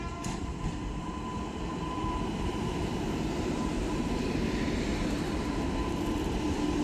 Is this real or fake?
fake